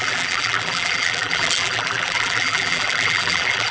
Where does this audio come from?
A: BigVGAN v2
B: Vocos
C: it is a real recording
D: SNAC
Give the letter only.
A